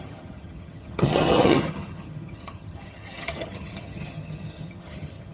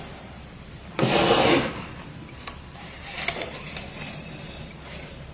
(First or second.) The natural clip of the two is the second